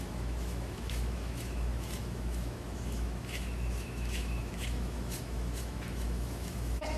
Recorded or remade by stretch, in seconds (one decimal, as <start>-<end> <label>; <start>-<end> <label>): 0.0-7.0 remade